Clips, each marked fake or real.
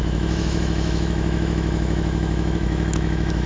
fake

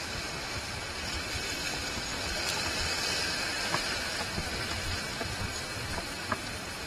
real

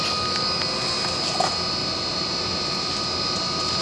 real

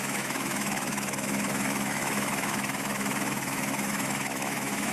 fake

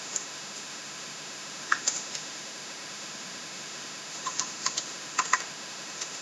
fake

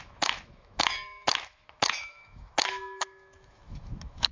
fake